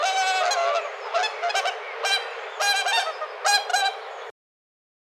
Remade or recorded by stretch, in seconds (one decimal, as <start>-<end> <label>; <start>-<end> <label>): 0.0-3.7 recorded; 3.7-4.3 remade; 4.3-5.2 recorded